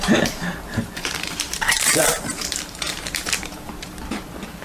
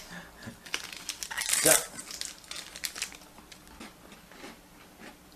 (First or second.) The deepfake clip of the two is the first